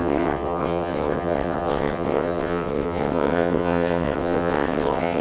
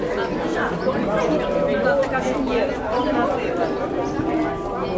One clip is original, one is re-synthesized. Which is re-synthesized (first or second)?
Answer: first